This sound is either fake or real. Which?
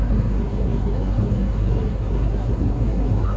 fake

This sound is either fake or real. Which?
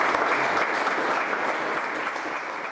real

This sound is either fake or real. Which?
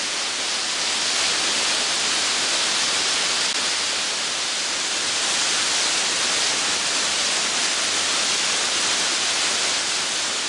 real